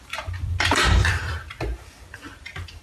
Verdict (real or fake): fake